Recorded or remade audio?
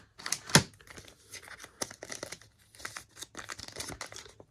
recorded